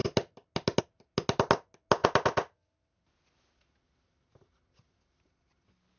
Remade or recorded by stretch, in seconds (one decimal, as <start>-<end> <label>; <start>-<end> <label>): 0.0-6.0 recorded